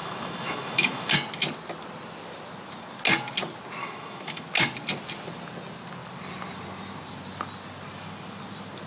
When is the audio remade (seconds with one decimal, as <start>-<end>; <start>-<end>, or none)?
0.0-1.1; 3.8-4.4